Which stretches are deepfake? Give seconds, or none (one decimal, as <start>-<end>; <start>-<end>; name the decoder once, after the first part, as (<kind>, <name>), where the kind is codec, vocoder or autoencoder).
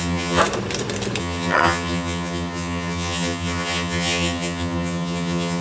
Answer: 0.0-0.4 (vocoder, HiFi-GAN); 1.2-5.6